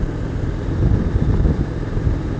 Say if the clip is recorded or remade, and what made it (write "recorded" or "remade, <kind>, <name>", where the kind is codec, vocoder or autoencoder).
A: remade, vocoder, BigVGAN v2